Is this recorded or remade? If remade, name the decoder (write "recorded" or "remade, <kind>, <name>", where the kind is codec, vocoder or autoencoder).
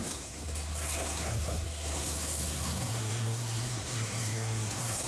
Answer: remade, codec, SNAC